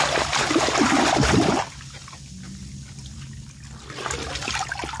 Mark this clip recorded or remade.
recorded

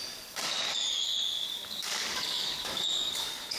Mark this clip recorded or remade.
remade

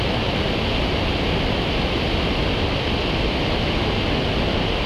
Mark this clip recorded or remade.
recorded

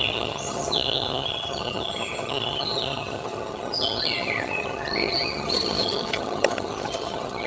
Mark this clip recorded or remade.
remade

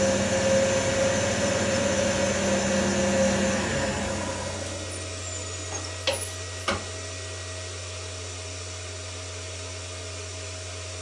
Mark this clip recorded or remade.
recorded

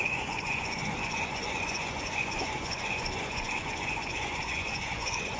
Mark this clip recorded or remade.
remade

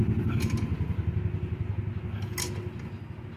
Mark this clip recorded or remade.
recorded